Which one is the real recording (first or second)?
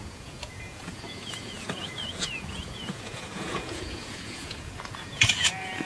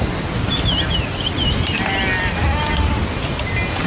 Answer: second